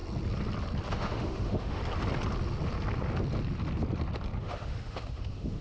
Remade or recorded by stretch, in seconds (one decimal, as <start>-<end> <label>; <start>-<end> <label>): 0.0-0.9 recorded; 0.9-1.8 remade; 1.8-4.4 recorded; 4.4-5.6 remade